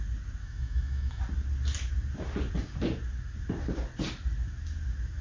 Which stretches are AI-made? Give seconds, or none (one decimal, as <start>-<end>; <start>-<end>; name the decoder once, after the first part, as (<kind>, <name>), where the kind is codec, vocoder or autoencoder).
0.4-1.2 (autoencoder, DAC-VAE)